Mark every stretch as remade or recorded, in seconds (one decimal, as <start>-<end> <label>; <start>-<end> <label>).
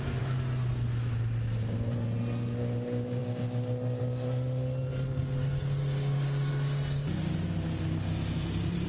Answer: 0.0-5.4 recorded; 5.4-6.5 remade; 6.5-8.9 recorded